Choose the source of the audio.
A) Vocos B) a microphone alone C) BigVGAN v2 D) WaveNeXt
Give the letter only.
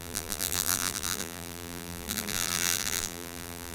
C